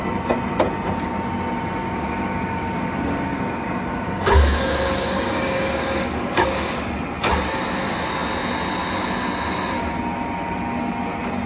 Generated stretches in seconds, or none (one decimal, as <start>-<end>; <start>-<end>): 1.8-6.9